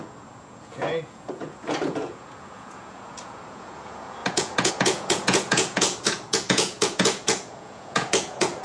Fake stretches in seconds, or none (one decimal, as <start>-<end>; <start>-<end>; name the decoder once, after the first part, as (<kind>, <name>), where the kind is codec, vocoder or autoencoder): 0.0-8.6 (vocoder, Vocos)